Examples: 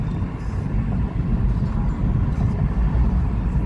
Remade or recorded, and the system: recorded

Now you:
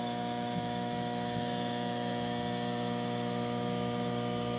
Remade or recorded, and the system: remade, autoencoder, DAC-VAE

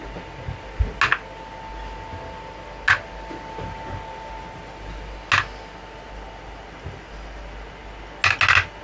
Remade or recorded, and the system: recorded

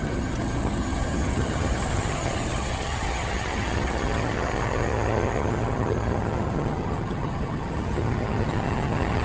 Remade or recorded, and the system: remade, vocoder, HiFi-GAN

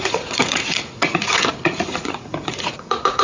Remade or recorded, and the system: remade, vocoder, Vocos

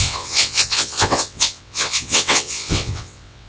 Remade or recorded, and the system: remade, vocoder, WaveNeXt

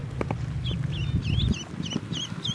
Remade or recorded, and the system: recorded